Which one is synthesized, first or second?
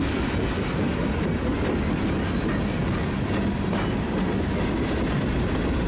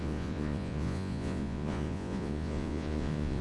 second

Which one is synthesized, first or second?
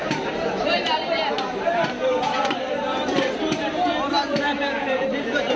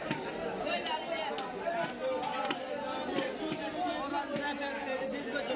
first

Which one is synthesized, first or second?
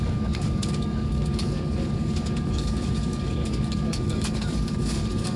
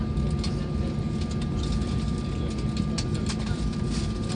first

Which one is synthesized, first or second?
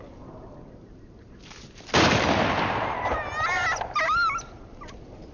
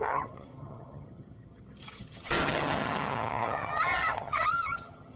second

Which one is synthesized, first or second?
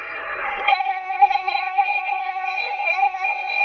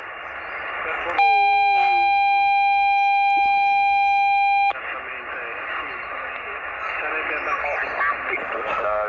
first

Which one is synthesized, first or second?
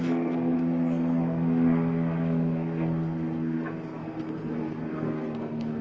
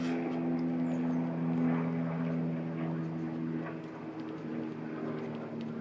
first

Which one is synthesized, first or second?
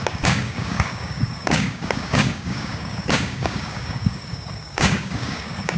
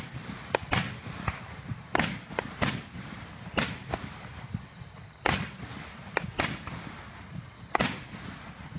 first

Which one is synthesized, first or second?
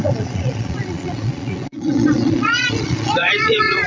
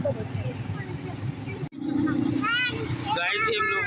first